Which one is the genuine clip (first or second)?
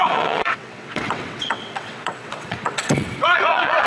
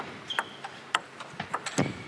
second